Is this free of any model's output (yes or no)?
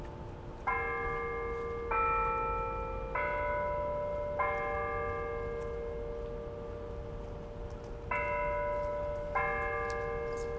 yes